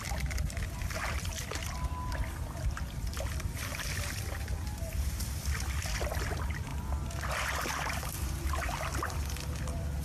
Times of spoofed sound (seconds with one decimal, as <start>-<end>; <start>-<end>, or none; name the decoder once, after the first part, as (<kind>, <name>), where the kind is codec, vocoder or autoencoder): none